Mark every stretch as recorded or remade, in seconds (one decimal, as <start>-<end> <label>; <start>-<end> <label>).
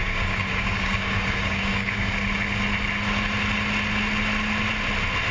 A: 0.0-2.1 remade; 2.1-5.3 recorded